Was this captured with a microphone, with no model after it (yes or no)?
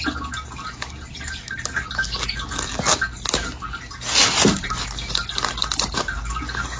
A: yes